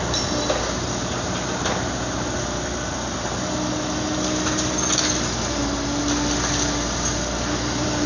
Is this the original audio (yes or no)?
yes